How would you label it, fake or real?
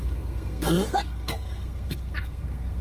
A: fake